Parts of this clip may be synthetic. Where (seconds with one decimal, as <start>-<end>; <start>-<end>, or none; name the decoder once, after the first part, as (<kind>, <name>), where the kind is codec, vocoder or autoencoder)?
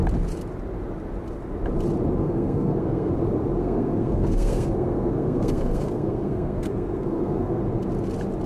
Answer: 2.2-3.1 (codec, SNAC); 3.6-7.6